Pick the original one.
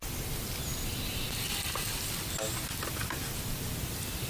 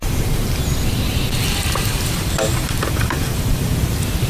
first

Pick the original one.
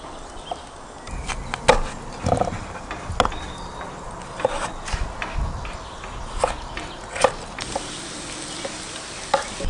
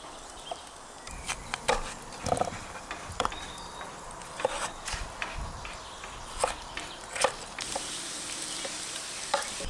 first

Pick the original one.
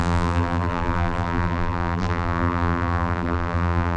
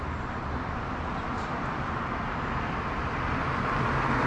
second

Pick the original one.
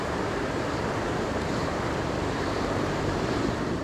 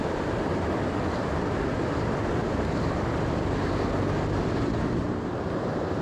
second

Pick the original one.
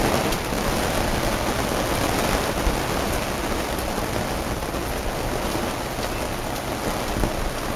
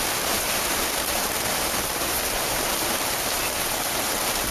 first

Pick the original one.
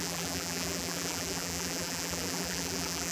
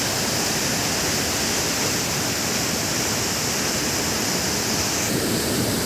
second